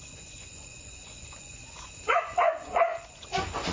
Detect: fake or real fake